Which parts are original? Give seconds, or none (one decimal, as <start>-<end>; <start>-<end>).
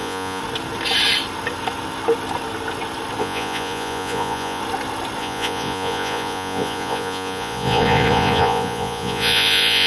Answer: 0.4-3.2; 4.6-5.2